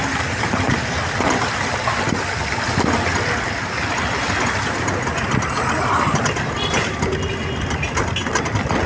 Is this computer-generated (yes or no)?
no